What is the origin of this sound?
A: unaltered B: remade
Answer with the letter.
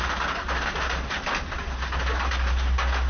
A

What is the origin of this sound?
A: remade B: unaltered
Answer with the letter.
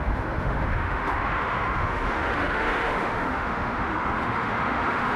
A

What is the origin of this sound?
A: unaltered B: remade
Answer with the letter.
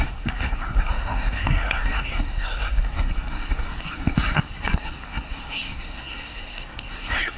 B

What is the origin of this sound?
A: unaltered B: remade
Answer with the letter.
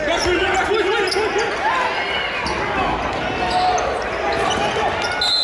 A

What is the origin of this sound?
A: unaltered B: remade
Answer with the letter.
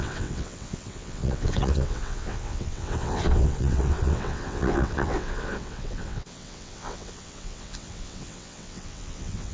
B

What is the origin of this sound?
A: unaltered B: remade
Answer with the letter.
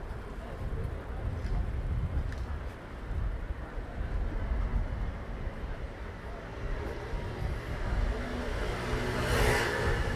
A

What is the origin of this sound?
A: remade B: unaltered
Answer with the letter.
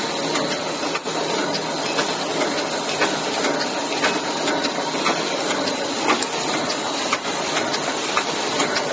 B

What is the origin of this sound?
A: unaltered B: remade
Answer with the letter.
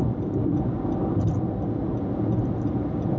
A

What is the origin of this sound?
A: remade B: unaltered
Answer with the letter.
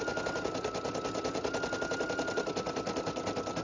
B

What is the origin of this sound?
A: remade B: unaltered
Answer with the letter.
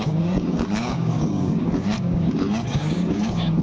A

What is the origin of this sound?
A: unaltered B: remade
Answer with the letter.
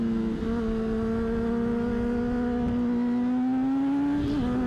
A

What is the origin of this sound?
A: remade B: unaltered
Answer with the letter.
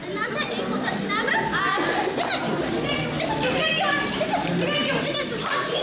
B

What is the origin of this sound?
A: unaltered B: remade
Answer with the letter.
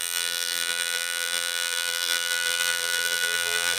B